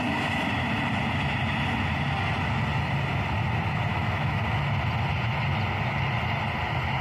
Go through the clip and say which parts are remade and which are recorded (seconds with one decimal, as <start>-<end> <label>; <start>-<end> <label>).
0.0-3.9 recorded; 3.9-4.4 remade; 4.4-7.0 recorded